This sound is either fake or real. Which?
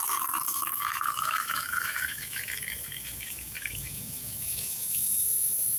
fake